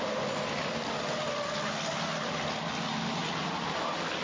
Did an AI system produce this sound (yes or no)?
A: no